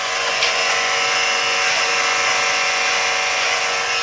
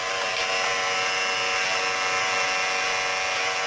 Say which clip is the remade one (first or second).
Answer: first